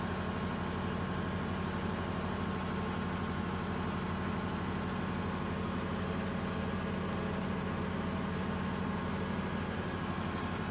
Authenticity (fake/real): real